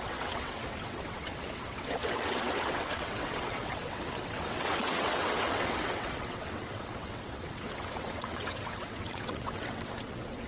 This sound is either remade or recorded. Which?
remade